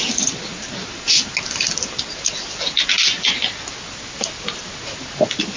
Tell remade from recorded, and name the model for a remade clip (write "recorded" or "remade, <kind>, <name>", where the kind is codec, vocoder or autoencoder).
recorded